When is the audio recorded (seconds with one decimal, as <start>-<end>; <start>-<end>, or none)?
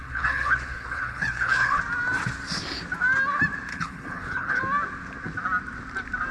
1.8-3.7; 4.6-6.3